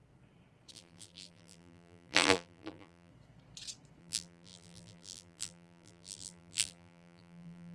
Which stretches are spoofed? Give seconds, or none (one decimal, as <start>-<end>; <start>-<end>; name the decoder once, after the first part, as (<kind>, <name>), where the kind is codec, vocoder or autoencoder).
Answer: 0.7-3.1 (vocoder, BigVGAN v2); 4.0-7.7